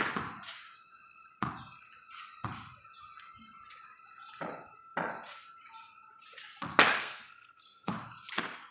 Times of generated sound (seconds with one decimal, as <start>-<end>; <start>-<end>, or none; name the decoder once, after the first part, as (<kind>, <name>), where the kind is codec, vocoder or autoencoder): 7.0-7.9 (codec, SNAC)